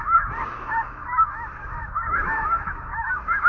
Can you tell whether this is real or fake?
fake